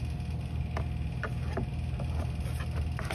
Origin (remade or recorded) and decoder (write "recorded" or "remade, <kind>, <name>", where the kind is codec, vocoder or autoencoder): recorded